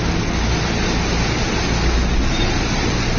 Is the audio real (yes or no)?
yes